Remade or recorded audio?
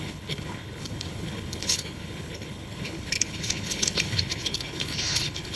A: remade